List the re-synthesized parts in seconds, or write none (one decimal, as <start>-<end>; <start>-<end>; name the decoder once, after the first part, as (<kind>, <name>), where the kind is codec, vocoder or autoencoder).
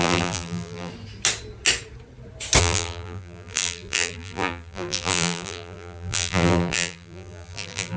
0.0-0.9 (vocoder, BigVGAN v2); 2.6-8.0